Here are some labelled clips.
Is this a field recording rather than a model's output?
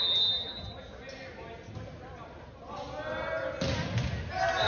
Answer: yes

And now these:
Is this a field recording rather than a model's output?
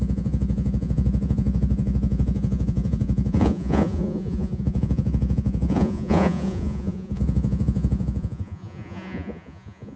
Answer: no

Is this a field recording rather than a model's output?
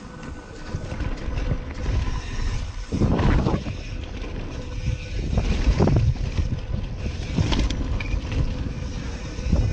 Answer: yes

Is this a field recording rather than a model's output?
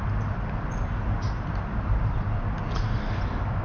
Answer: yes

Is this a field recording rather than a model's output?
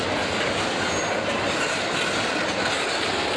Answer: yes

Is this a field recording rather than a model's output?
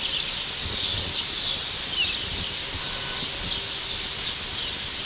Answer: yes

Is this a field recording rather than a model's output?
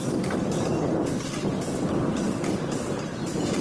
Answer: yes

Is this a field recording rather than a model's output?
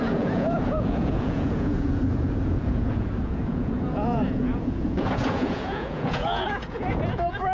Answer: no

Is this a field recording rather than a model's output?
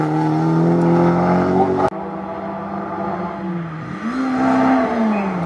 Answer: yes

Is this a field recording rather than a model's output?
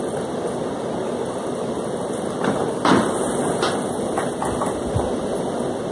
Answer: yes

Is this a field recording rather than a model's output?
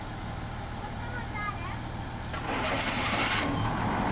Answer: yes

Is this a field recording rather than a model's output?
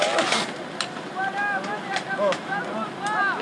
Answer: yes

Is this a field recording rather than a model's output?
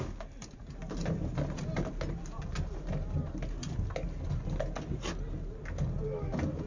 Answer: yes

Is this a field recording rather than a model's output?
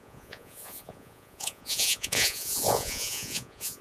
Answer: no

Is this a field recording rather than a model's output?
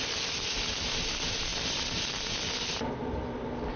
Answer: yes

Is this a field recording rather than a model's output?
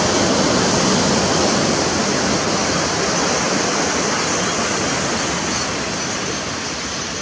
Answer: yes